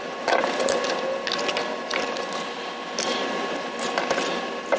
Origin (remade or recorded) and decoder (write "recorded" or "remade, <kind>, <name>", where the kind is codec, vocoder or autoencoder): recorded